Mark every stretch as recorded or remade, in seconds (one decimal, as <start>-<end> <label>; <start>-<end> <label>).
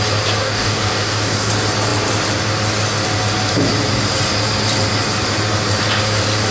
0.0-0.4 recorded; 0.4-1.5 remade; 1.5-6.5 recorded